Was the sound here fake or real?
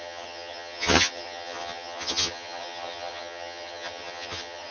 fake